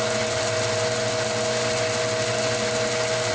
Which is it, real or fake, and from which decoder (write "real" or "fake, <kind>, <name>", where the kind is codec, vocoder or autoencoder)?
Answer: real